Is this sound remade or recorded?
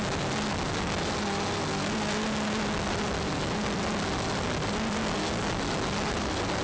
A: recorded